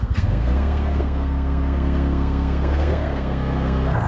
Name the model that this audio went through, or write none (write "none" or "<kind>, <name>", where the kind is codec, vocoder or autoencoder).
codec, SNAC